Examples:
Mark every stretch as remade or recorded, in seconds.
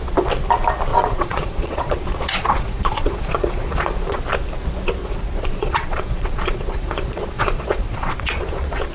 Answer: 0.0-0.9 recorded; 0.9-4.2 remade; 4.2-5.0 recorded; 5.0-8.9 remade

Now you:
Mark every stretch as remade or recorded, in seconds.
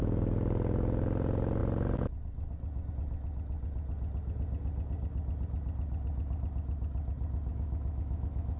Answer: 0.0-7.5 recorded; 7.5-8.6 remade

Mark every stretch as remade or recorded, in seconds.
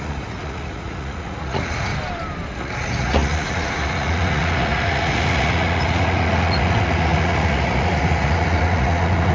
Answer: 0.0-1.9 remade; 1.9-2.5 recorded; 2.5-9.3 remade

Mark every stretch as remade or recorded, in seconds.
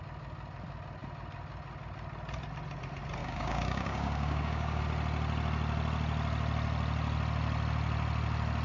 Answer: 0.0-3.2 recorded; 3.2-4.8 remade; 4.8-8.6 recorded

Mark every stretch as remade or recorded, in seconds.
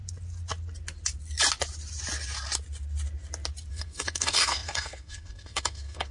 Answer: 0.0-3.7 recorded; 3.7-6.1 remade